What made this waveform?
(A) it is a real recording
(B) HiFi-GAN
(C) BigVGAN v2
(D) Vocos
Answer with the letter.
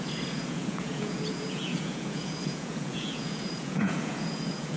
D